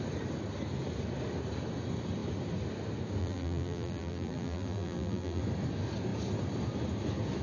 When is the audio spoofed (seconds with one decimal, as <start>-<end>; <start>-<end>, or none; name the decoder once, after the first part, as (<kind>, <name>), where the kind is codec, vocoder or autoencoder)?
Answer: 3.2-5.4 (vocoder, BigVGAN v2)